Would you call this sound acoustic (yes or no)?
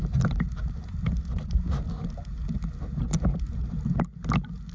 yes